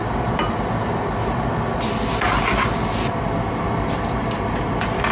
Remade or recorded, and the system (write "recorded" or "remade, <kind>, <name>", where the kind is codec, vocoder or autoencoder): recorded